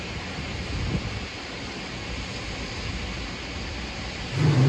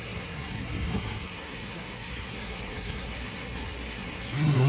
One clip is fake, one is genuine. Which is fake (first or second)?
second